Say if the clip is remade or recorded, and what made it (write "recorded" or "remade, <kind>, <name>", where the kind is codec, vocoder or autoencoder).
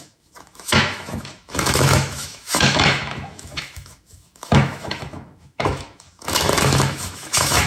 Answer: remade, autoencoder, DAC-VAE